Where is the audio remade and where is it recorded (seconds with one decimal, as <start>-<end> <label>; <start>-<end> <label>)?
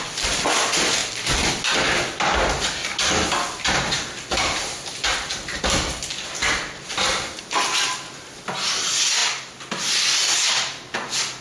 0.0-11.4 recorded